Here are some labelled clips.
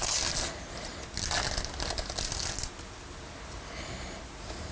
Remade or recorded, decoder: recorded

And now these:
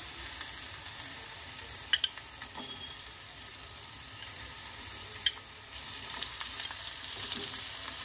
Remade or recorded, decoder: remade, vocoder, BigVGAN v2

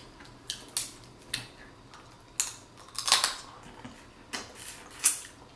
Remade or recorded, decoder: recorded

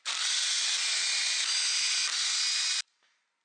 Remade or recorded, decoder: recorded